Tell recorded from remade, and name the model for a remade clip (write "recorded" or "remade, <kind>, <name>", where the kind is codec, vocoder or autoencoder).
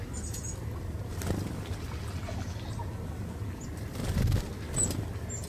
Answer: recorded